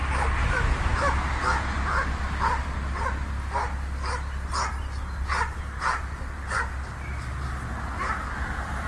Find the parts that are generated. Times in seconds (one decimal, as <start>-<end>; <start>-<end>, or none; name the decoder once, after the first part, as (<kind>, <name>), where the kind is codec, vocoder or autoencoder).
none